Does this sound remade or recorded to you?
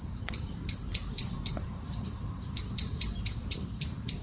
remade